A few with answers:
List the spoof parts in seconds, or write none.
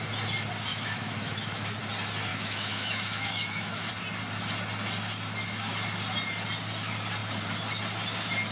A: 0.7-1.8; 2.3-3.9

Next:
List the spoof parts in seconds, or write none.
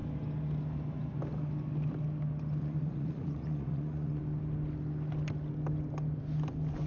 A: 2.6-4.2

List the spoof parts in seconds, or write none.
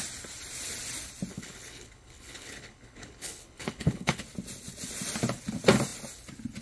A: 1.3-4.2